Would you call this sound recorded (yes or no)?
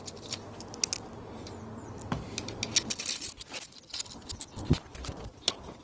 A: yes